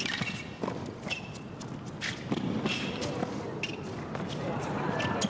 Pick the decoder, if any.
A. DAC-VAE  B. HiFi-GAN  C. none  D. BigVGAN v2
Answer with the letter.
C